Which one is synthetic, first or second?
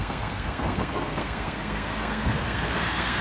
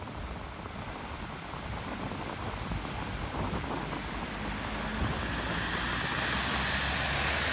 first